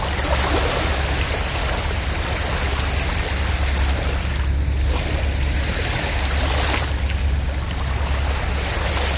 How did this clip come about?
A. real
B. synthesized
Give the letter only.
A